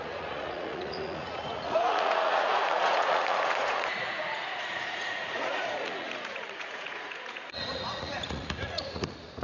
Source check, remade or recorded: remade